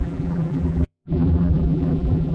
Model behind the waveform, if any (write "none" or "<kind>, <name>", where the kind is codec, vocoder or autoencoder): vocoder, BigVGAN v2